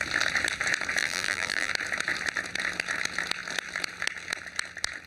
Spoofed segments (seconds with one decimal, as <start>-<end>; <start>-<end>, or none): 1.0-1.7